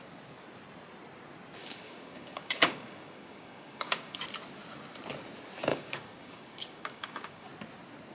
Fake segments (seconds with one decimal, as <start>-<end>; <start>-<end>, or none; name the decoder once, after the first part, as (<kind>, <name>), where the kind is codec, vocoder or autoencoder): 1.6-4.2 (codec, DAC); 5.7-7.5